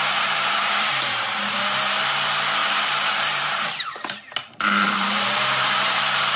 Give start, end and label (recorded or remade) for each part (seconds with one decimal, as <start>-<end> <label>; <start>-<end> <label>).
0.0-1.6 remade; 1.6-2.6 recorded; 2.6-6.4 remade